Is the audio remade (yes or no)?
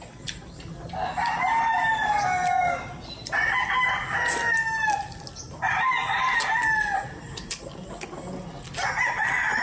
no